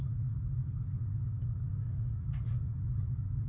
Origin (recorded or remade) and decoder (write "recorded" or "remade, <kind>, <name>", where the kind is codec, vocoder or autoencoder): remade, vocoder, Vocos